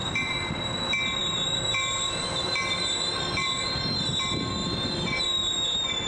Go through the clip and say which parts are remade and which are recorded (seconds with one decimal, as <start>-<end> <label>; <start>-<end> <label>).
0.0-0.5 remade; 0.5-1.2 recorded; 1.2-2.8 remade; 2.8-3.4 recorded; 3.4-4.1 remade; 4.1-4.6 recorded; 4.6-5.2 remade; 5.2-6.1 recorded